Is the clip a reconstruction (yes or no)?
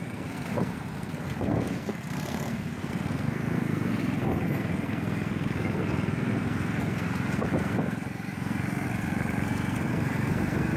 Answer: yes